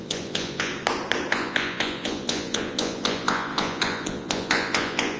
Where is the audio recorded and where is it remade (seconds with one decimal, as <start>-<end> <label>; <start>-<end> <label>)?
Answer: 0.0-0.7 remade; 0.7-1.3 recorded; 1.3-5.2 remade